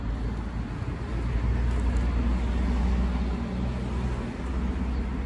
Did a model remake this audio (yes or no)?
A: no